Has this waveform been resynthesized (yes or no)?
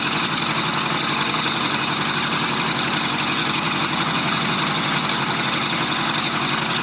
yes